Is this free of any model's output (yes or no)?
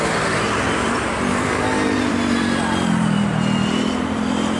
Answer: no